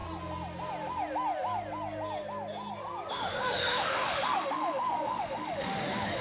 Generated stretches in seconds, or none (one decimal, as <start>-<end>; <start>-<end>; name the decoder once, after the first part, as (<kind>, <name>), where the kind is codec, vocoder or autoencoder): 3.1-6.2 (autoencoder, DAC-VAE)